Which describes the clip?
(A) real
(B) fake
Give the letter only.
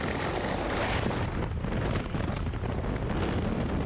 A